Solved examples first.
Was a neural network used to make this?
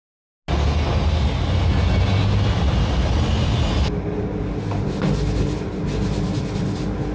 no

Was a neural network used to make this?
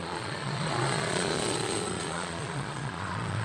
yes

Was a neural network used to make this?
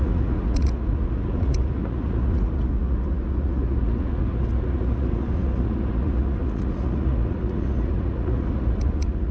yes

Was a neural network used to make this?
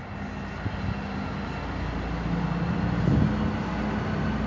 no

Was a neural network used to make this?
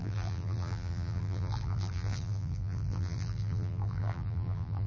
yes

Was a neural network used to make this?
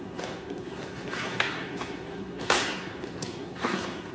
yes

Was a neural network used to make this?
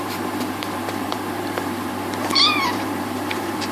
yes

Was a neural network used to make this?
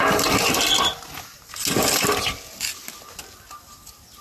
no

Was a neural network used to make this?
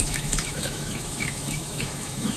yes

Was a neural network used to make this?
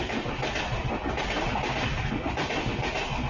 no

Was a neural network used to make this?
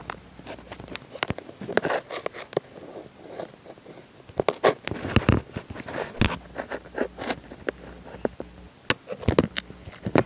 no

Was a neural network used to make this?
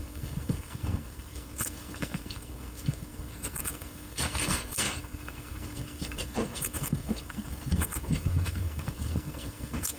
yes